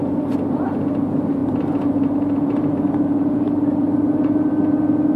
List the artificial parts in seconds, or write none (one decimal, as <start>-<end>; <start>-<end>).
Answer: 1.4-4.5